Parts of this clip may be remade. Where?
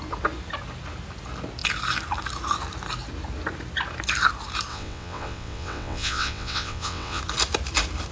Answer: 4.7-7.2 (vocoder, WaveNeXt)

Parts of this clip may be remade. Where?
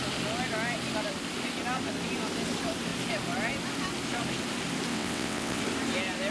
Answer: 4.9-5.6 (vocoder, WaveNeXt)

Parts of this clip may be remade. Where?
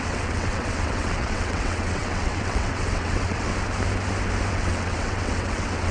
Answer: 0.0-3.5 (vocoder, WaveNeXt); 4.5-5.9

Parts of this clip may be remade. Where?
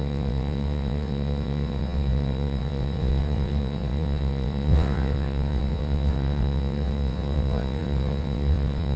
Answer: 0.0-9.0 (vocoder, WaveNeXt)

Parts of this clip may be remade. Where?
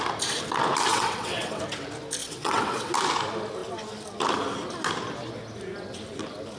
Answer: 0.9-1.6 (vocoder, WaveNeXt); 2.2-2.9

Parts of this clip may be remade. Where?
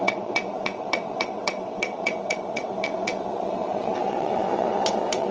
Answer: 0.0-5.3 (vocoder, WaveNeXt)